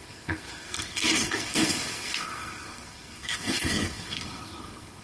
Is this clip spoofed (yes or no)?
yes